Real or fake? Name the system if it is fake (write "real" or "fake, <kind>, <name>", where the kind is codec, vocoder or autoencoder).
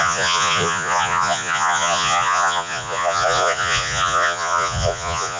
fake, vocoder, Vocos